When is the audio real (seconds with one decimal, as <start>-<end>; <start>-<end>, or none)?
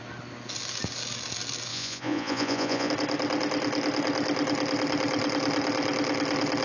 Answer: 0.0-1.7; 2.9-6.6